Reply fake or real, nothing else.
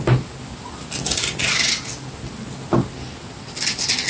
real